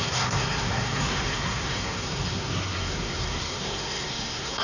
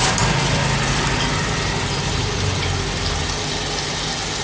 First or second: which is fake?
first